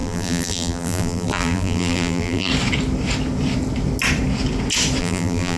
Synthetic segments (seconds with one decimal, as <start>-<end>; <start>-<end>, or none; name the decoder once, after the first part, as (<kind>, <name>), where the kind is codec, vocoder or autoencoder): 0.0-2.5 (vocoder, BigVGAN v2); 5.0-5.6